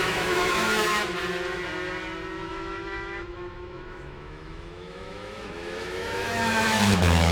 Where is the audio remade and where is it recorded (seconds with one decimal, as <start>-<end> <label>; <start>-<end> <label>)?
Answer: 0.0-1.2 remade; 1.2-2.5 recorded; 2.5-7.3 remade